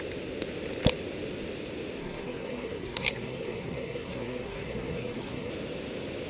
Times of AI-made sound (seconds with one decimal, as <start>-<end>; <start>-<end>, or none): 2.0-5.5